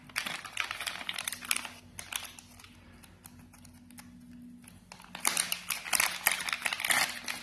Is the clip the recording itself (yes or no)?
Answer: yes